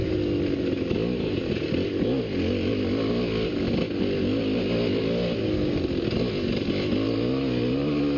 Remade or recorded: recorded